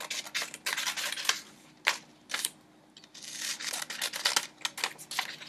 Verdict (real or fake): real